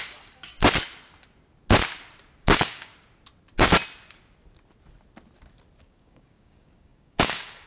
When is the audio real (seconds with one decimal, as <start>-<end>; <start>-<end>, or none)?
0.6-2.4; 2.9-5.8